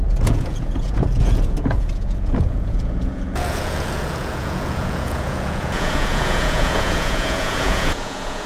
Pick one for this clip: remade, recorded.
remade